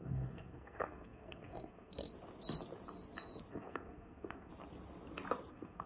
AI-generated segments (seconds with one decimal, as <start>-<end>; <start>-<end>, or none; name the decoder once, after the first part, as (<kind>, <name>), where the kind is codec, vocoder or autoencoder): 0.0-2.1 (codec, SNAC); 3.5-4.5; 5.5-5.9